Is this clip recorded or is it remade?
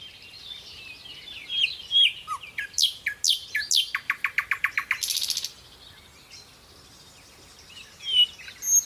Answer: recorded